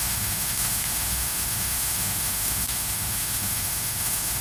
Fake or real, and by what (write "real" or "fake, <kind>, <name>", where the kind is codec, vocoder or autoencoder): fake, autoencoder, DAC-VAE